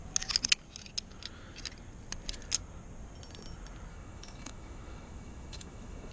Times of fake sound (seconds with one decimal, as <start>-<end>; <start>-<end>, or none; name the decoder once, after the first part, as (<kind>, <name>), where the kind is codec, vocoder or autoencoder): 3.9-6.1 (autoencoder, DAC-VAE)